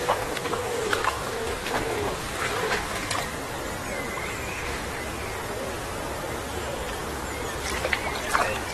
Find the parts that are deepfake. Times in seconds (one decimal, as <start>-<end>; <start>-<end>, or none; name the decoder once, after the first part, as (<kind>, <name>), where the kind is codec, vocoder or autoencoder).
0.0-3.1 (codec, DAC); 4.5-5.0

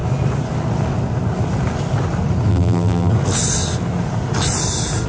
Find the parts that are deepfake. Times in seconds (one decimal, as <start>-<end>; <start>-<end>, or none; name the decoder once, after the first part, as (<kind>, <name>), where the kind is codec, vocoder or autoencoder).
2.5-3.1 (vocoder, BigVGAN v2)